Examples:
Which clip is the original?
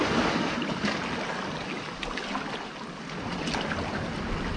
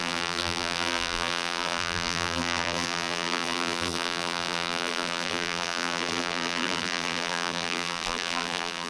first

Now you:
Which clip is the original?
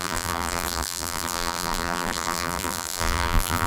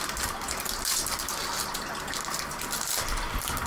second